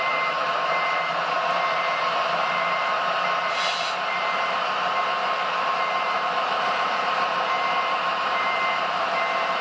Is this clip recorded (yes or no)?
no